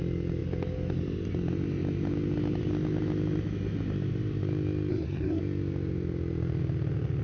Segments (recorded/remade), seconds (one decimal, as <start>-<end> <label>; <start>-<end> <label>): 0.0-4.9 recorded; 4.9-5.4 remade; 5.4-7.2 recorded